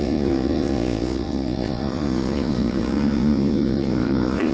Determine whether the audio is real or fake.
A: fake